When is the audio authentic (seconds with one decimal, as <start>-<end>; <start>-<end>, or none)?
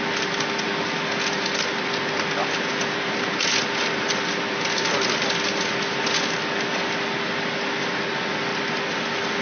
0.0-9.4